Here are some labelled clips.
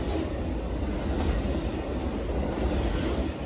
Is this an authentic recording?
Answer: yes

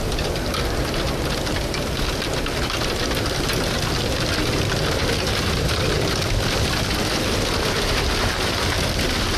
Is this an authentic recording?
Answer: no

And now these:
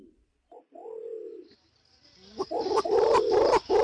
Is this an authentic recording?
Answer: yes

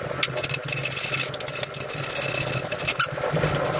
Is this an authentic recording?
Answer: yes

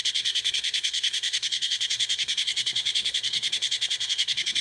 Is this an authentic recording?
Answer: no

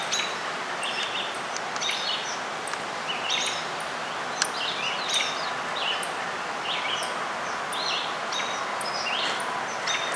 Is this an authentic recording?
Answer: yes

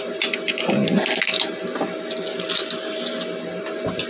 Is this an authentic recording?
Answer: yes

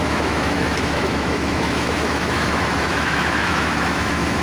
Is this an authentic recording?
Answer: no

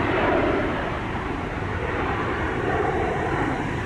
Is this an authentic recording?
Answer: no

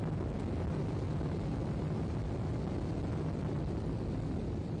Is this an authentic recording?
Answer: yes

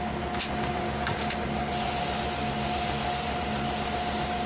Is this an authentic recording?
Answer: yes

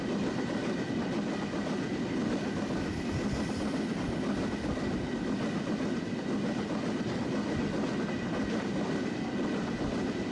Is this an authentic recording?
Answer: yes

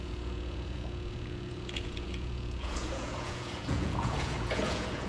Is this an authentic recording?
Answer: no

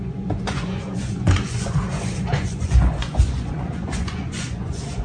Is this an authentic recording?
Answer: no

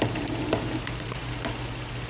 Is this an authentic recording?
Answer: yes